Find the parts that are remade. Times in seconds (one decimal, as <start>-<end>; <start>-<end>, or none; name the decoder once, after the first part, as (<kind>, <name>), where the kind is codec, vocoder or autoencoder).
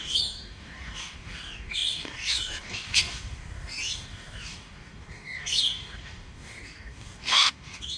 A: 0.0-8.0 (codec, DAC)